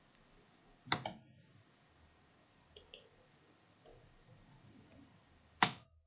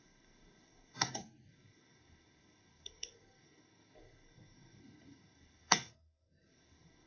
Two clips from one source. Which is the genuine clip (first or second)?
first